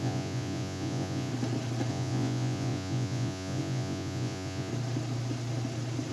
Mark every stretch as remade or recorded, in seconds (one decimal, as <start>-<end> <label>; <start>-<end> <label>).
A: 0.0-1.3 remade; 1.3-1.9 recorded; 1.9-4.7 remade; 4.7-6.1 recorded